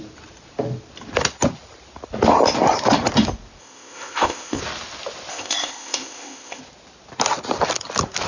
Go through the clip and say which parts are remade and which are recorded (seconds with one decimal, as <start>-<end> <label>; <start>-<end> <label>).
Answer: 0.0-3.6 recorded; 3.6-4.6 remade; 4.6-5.3 recorded; 5.3-6.6 remade; 6.6-8.3 recorded